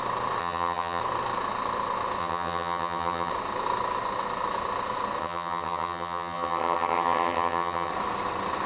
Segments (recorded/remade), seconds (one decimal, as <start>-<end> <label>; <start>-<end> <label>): 0.0-0.4 recorded; 0.4-1.0 remade; 1.0-2.2 recorded; 2.2-3.3 remade; 3.3-5.2 recorded; 5.2-7.9 remade; 7.9-8.7 recorded